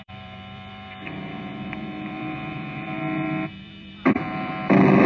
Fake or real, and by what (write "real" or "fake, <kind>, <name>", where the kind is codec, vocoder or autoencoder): fake, vocoder, BigVGAN v2